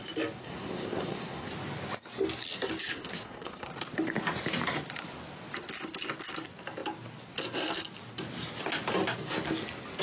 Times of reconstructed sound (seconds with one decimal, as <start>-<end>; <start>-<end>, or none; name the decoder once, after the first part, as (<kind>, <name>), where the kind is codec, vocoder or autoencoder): 0.4-1.5 (codec, SNAC); 2.9-3.7